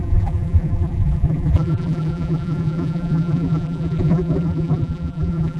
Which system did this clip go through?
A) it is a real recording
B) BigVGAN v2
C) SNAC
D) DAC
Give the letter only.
B